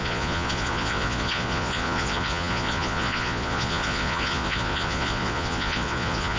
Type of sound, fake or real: fake